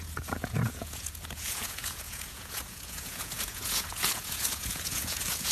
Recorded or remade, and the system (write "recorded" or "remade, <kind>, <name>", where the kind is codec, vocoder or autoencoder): remade, vocoder, Vocos